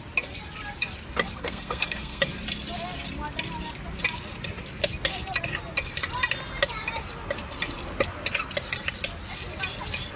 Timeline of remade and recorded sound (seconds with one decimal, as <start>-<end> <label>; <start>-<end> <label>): 0.0-1.4 recorded; 1.4-2.2 remade; 2.2-10.2 recorded